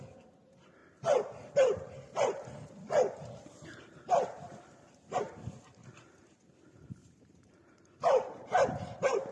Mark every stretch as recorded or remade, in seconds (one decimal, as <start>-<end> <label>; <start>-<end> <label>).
0.0-0.8 recorded; 0.8-5.2 remade; 5.2-7.0 recorded; 7.0-9.3 remade

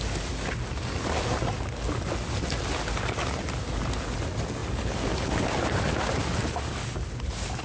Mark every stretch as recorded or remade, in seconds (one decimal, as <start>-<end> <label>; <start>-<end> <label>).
0.0-7.6 recorded